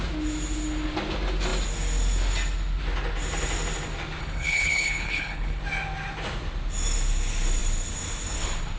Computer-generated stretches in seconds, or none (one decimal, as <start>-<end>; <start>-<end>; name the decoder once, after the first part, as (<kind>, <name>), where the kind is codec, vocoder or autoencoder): 4.2-5.6 (codec, HILCodec)